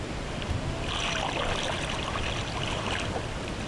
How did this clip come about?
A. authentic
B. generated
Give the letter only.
A